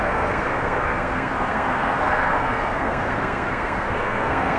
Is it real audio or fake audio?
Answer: fake